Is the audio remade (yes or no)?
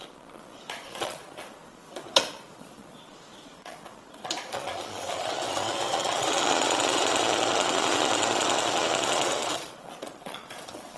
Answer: yes